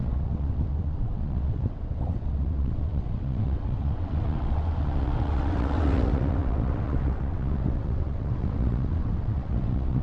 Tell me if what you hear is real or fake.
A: fake